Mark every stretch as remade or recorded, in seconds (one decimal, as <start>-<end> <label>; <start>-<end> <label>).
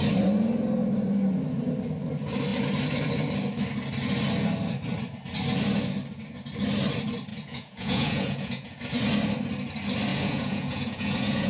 0.0-7.3 recorded; 7.3-8.8 remade; 8.8-10.1 recorded; 10.1-11.5 remade